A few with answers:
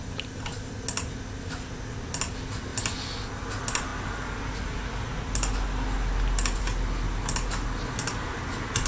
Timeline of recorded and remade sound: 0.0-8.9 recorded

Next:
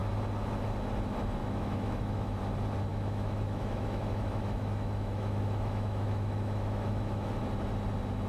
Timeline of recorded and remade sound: 0.0-1.4 recorded; 1.4-2.4 remade; 2.4-2.9 recorded; 2.9-7.4 remade; 7.4-8.3 recorded

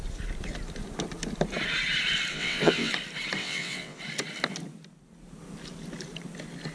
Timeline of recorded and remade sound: 0.0-2.3 recorded; 2.3-2.9 remade; 2.9-3.4 recorded; 3.4-4.0 remade; 4.0-6.7 recorded

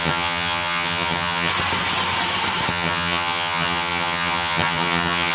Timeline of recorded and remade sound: 0.0-1.5 remade; 1.5-2.7 recorded; 2.7-5.3 remade

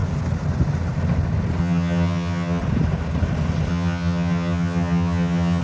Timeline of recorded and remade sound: 0.0-1.6 recorded; 1.6-2.6 remade; 2.6-3.7 recorded; 3.7-5.6 remade

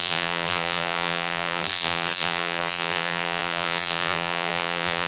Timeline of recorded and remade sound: 0.0-5.1 remade